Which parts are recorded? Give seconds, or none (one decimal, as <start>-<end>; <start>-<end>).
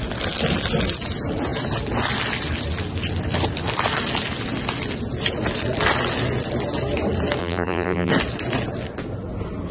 0.0-7.4; 8.1-9.7